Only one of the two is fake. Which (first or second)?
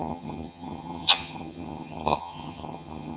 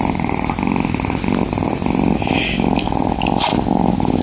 first